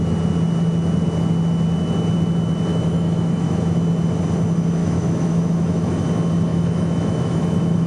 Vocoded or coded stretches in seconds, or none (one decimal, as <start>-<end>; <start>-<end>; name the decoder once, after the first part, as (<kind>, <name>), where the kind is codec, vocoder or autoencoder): 2.7-3.7 (autoencoder, DAC-VAE); 4.8-6.0; 6.5-7.9